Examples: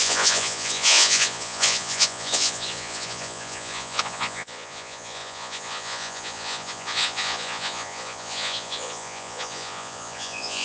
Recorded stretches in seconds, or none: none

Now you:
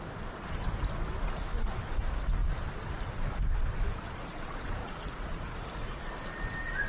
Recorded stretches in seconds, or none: 0.0-4.8; 6.0-6.9

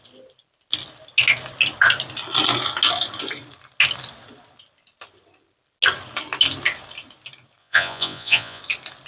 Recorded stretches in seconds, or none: 0.0-7.6; 8.6-9.1

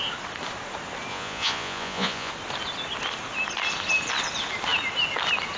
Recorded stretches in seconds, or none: 0.0-1.1; 2.3-5.6